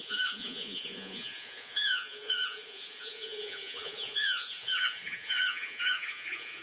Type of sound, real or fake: fake